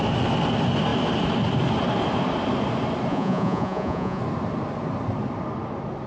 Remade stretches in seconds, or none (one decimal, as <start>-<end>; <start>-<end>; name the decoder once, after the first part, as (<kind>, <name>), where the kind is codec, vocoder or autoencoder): 3.1-4.2 (vocoder, Vocos)